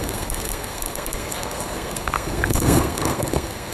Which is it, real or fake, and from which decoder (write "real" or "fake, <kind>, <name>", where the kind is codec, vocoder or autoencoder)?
fake, codec, SNAC